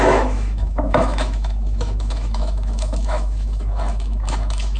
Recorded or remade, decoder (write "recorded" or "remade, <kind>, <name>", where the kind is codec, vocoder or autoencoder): remade, autoencoder, DAC-VAE